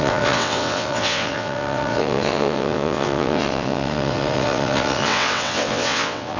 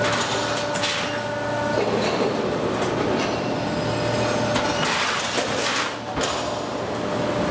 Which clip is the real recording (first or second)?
second